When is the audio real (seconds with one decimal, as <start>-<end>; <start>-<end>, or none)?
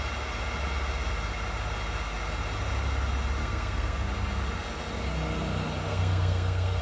0.0-3.4; 4.1-5.9